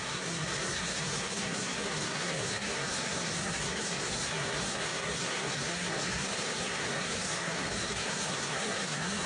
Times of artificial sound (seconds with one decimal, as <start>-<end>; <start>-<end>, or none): 0.0-9.3